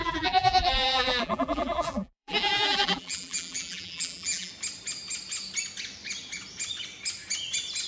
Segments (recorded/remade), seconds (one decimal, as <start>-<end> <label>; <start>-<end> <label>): 0.0-4.5 remade; 4.5-7.9 recorded